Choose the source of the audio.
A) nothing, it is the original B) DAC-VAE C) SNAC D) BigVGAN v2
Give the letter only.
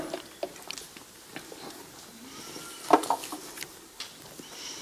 A